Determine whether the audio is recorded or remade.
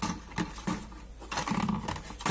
recorded